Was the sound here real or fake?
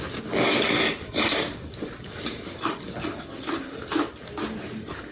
real